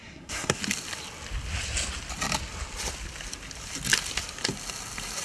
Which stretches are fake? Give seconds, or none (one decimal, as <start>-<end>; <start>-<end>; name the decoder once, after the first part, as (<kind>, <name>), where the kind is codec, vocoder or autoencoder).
0.0-0.6 (codec, SNAC)